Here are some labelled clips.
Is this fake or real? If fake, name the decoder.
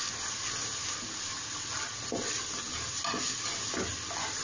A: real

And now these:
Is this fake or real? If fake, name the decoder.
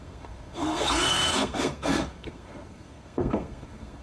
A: fake, codec, SNAC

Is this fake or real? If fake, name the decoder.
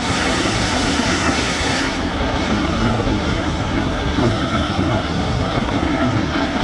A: fake, codec, SNAC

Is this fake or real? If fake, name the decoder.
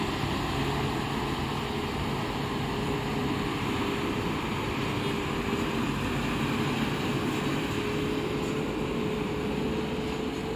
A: real